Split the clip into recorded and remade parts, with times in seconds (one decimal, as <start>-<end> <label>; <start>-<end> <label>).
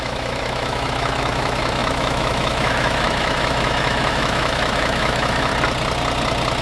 0.0-5.5 remade; 5.5-6.6 recorded